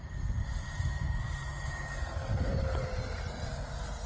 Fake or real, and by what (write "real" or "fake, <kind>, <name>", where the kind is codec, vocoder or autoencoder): fake, vocoder, BigVGAN v2